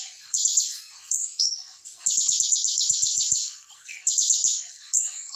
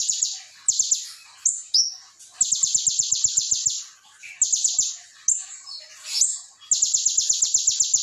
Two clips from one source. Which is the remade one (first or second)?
first